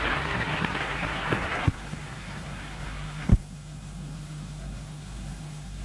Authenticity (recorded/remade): remade